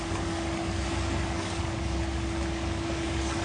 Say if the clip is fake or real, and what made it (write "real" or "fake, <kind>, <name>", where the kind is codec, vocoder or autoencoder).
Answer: fake, codec, DAC